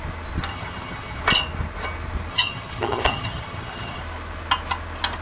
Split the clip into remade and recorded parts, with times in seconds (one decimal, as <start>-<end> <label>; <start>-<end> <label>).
0.0-0.5 recorded; 0.5-1.2 remade; 1.2-2.3 recorded; 2.3-4.0 remade; 4.0-5.2 recorded